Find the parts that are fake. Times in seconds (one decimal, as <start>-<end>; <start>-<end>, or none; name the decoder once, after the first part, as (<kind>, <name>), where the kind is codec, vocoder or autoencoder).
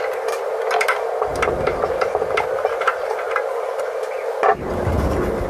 1.3-2.4 (vocoder, BigVGAN v2)